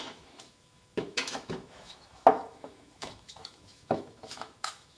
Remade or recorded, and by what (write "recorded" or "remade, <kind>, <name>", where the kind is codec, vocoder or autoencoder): remade, autoencoder, DAC-VAE